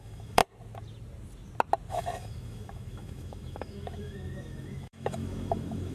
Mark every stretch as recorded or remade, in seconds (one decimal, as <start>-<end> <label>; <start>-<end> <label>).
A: 0.0-0.4 remade; 0.4-1.9 recorded; 1.9-5.9 remade